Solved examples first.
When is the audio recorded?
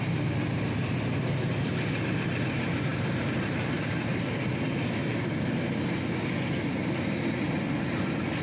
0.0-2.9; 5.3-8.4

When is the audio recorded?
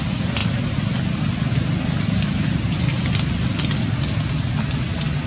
0.0-5.3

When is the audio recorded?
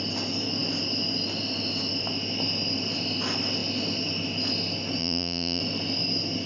0.0-5.0; 5.6-6.5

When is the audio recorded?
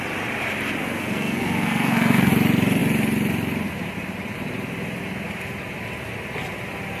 0.0-0.8; 2.3-7.0